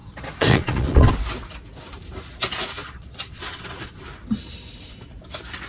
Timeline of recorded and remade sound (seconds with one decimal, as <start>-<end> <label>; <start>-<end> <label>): 0.0-1.1 remade; 1.1-2.8 recorded; 2.8-4.0 remade; 4.0-5.7 recorded